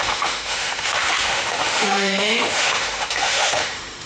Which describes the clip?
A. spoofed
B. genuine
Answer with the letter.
A